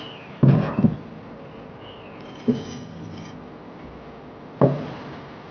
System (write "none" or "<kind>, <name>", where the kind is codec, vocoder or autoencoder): none